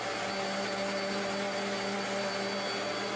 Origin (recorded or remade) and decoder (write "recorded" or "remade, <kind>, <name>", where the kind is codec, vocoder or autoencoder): recorded